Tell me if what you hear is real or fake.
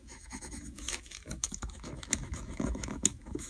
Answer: fake